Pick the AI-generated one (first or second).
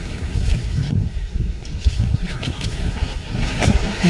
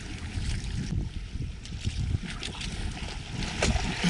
first